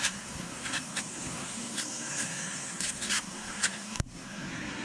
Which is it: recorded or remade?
remade